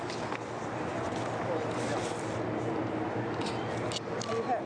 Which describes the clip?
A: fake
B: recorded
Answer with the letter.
B